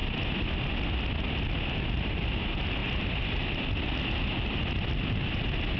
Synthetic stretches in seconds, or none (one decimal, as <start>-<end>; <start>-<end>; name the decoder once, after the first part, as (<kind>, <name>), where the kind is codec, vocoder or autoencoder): none